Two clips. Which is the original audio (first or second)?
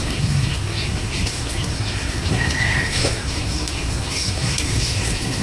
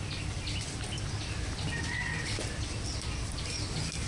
second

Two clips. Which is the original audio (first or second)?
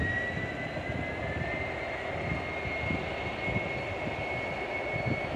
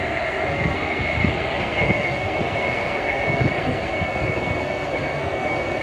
first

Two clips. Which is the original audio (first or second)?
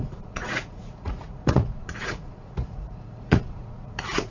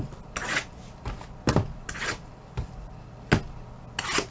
second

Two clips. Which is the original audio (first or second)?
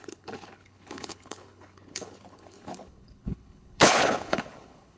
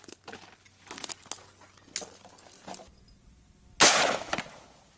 second